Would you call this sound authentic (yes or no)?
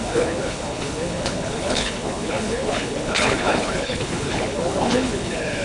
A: no